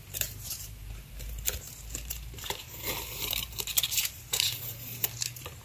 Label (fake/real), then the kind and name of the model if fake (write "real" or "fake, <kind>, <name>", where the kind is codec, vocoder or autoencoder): fake, vocoder, BigVGAN v2